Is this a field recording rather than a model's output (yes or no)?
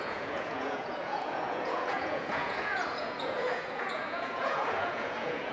no